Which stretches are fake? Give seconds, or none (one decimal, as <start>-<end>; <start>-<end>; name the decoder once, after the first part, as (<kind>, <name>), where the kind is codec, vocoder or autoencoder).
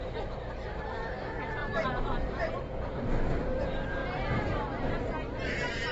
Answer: 1.6-2.5 (vocoder, BigVGAN v2); 4.0-4.8